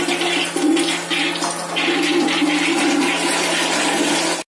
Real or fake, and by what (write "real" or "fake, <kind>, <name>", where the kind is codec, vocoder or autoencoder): real